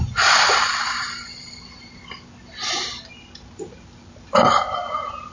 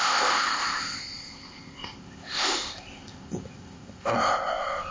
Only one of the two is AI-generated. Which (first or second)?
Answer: second